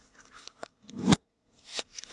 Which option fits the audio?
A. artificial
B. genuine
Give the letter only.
A